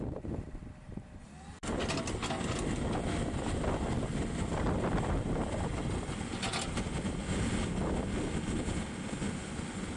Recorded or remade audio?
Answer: recorded